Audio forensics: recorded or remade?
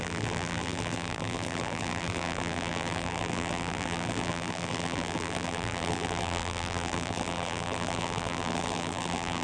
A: remade